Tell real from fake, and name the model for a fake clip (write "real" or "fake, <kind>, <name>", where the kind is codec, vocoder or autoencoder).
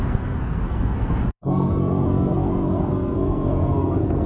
fake, codec, SNAC